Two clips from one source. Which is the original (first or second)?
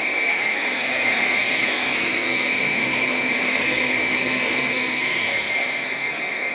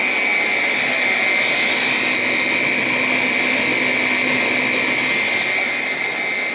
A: second